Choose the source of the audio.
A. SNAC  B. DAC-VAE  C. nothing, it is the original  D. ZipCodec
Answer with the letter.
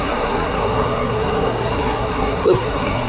A